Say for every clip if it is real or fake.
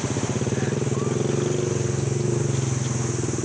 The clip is real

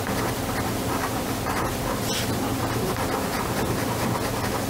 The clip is real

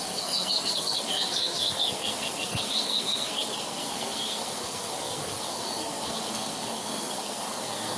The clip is fake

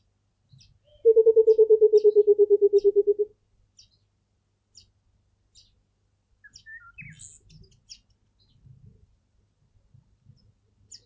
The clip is real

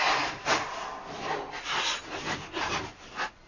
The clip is real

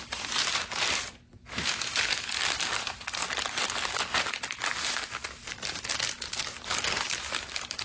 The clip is real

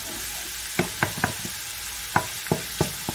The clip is real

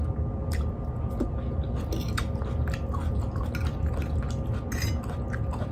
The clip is real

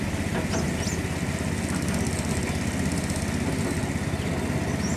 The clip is real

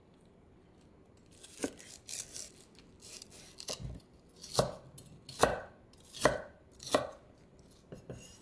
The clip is real